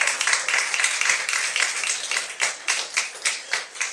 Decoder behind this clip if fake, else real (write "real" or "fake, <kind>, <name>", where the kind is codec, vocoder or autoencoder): real